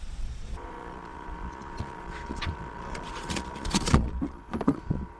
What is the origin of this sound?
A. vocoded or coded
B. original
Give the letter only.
A